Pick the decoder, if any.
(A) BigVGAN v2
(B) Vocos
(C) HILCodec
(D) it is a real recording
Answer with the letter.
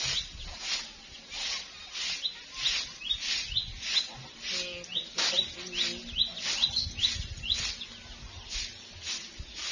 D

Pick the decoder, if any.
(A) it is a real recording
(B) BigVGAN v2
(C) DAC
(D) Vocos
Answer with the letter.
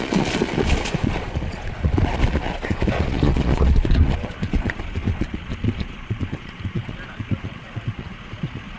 D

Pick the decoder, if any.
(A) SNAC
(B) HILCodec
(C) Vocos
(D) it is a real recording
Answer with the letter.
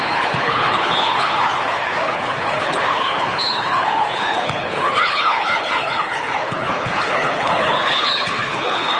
B